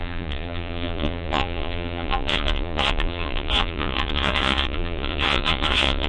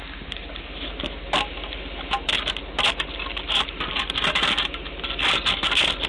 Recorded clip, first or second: second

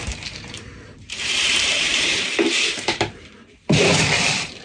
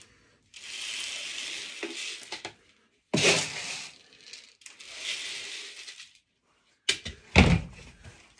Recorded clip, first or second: second